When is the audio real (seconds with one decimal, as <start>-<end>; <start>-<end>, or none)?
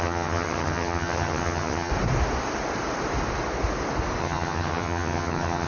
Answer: 1.9-4.2